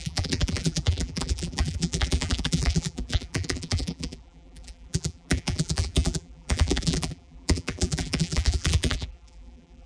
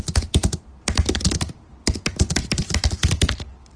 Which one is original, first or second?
second